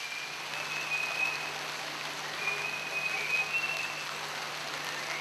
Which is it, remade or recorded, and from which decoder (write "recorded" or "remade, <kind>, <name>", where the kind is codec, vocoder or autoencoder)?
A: recorded